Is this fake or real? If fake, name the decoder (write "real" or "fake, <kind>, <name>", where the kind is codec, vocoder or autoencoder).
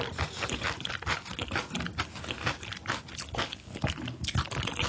real